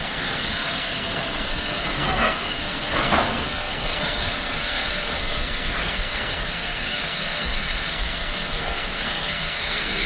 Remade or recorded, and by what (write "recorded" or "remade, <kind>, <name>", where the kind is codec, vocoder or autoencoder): remade, codec, SNAC